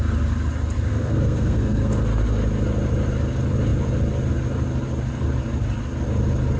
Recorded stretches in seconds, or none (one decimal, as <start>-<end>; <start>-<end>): 0.0-0.9; 1.9-6.6